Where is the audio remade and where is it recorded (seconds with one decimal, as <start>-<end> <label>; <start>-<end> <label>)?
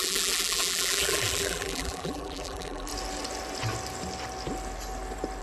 0.0-2.9 remade; 2.9-5.4 recorded